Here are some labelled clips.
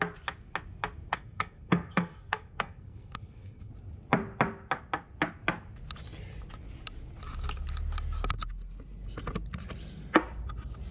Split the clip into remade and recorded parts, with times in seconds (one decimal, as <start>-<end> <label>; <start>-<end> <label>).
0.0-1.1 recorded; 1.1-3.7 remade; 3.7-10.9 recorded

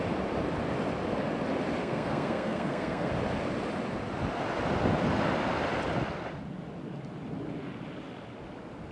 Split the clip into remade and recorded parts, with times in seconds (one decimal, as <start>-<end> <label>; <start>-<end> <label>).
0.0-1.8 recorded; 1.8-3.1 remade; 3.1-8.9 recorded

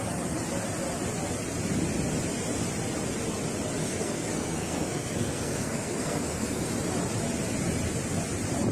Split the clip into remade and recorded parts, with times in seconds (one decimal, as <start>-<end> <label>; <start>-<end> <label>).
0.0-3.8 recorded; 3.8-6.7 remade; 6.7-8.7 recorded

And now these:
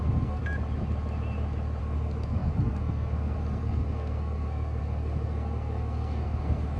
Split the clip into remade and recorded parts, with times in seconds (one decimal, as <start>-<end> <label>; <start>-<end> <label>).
0.0-0.4 remade; 0.4-1.8 recorded; 1.8-6.8 remade

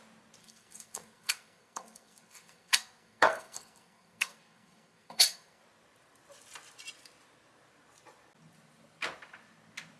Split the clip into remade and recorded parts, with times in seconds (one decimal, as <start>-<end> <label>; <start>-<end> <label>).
0.0-0.4 recorded; 0.4-5.6 remade; 5.6-10.0 recorded